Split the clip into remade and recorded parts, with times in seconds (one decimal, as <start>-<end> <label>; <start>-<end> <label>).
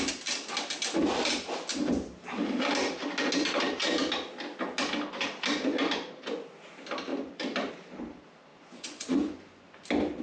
0.0-8.5 recorded; 8.5-9.7 remade; 9.7-10.2 recorded